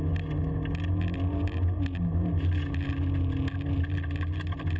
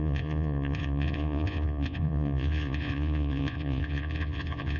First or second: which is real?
first